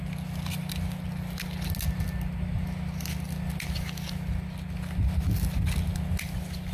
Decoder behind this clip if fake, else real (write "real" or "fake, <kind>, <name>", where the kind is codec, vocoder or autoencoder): real